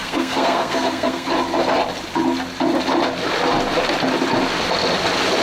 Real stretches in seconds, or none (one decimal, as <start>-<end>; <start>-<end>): 1.3-5.4